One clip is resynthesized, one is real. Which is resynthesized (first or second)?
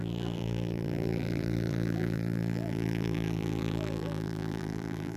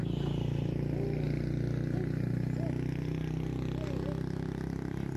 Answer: first